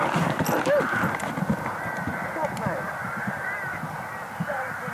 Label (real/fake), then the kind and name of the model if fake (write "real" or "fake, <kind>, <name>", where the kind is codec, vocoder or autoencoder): real